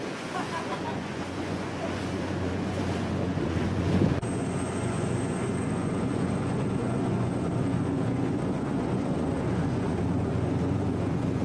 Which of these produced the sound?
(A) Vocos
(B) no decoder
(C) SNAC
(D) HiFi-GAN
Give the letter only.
A